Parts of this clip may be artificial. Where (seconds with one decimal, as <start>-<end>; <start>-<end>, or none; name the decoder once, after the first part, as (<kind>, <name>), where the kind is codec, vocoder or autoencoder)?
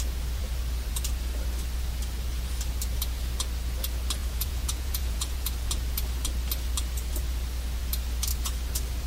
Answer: 4.2-5.5 (vocoder, Vocos)